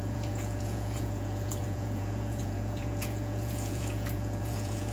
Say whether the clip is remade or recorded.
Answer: remade